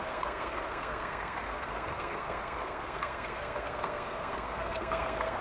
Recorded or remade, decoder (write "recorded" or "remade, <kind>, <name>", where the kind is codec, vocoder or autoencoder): remade, codec, SNAC